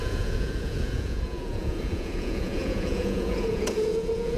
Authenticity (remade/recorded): remade